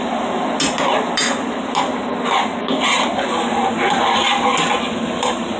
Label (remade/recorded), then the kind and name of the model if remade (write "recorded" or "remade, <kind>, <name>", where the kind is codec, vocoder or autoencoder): recorded